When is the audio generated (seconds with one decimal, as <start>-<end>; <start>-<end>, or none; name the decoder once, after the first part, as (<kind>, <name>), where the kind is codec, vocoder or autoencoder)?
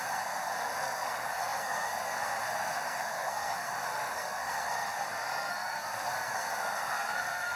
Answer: 0.0-7.6 (codec, SNAC)